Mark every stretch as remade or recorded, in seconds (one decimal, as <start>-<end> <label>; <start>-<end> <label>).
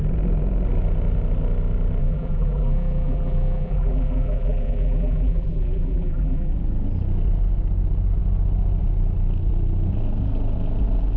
0.0-2.0 recorded; 2.0-6.5 remade; 6.5-11.2 recorded